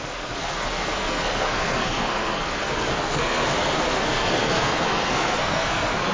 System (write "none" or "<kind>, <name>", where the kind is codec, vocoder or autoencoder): codec, SNAC